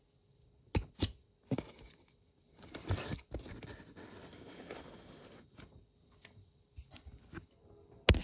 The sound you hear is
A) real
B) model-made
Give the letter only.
A